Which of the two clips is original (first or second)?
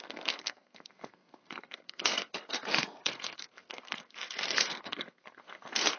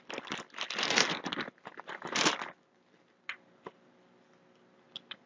second